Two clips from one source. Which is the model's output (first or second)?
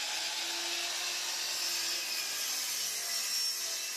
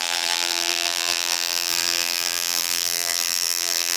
second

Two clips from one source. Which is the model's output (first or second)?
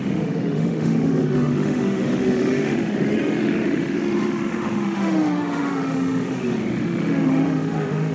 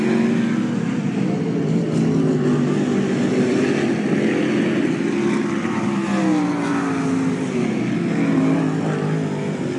first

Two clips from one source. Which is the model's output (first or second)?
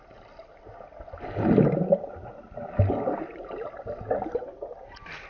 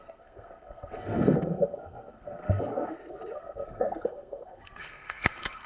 second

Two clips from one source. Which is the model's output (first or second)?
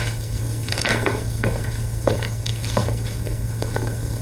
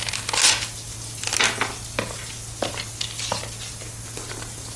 first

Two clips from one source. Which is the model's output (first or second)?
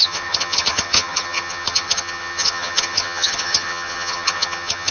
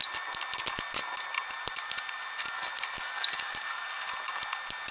first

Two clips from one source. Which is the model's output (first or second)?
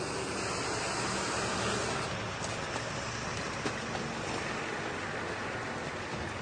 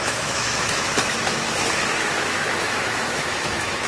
second